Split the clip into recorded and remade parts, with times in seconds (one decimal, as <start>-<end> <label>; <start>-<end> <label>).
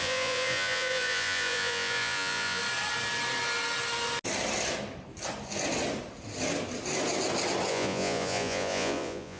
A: 0.0-2.6 remade; 2.6-7.7 recorded; 7.7-9.4 remade